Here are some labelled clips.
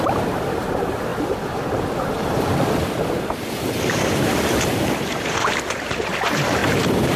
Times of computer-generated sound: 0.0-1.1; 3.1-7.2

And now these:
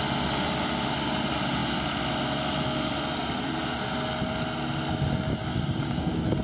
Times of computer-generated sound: 5.3-6.4

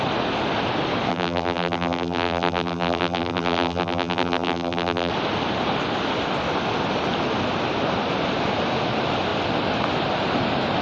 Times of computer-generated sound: 1.1-5.1

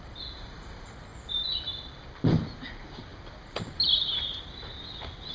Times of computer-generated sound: none